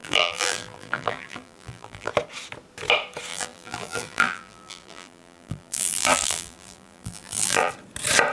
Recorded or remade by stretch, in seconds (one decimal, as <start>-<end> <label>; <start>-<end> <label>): 0.0-2.1 remade; 2.1-3.3 recorded; 3.3-7.7 remade; 7.7-8.3 recorded